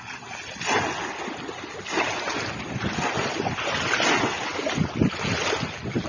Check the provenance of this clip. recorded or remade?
recorded